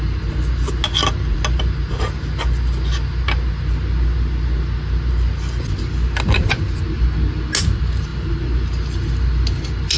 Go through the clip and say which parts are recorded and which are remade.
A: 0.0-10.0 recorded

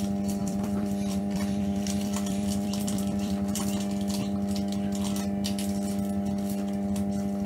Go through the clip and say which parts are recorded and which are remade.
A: 0.0-0.4 recorded; 0.4-3.6 remade; 3.6-7.5 recorded

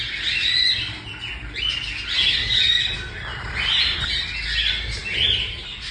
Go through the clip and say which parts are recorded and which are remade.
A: 0.0-3.3 recorded; 3.3-4.2 remade; 4.2-5.9 recorded